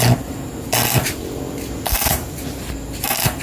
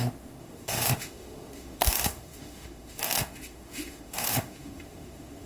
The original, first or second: first